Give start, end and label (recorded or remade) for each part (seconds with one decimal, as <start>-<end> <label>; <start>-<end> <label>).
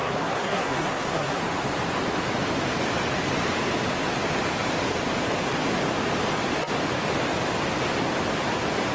0.0-1.4 remade; 1.4-8.9 recorded